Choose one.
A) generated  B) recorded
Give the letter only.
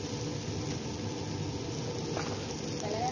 B